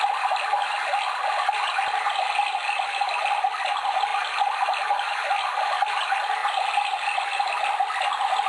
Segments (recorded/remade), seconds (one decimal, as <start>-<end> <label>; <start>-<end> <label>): 0.0-8.5 recorded